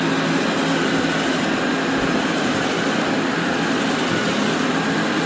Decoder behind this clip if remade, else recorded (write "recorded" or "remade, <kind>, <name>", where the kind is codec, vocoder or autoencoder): recorded